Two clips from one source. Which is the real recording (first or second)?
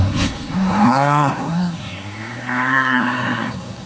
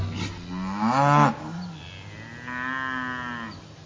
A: second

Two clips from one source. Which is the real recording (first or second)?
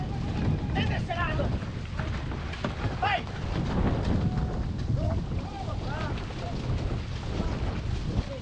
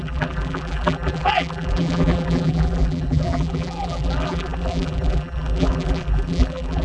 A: first